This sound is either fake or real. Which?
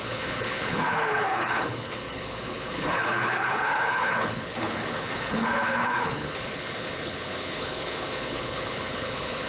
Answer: fake